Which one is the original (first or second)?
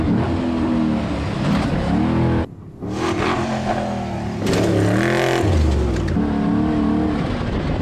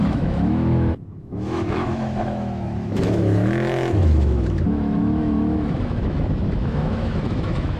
first